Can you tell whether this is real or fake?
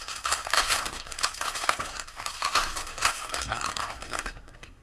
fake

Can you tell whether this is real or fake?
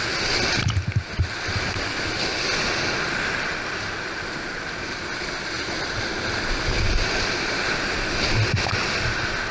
real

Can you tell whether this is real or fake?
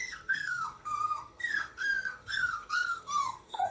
fake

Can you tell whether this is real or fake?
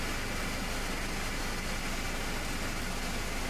real